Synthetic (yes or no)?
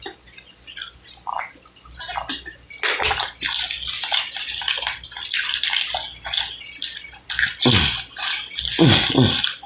no